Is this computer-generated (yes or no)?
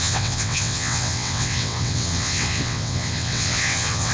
yes